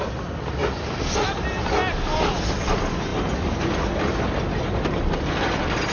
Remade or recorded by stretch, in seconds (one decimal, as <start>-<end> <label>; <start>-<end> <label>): 0.0-5.9 recorded